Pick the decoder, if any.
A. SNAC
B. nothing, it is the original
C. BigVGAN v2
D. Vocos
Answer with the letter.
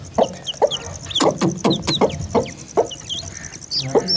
B